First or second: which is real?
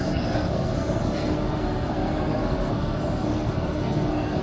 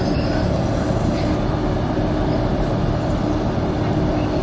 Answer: second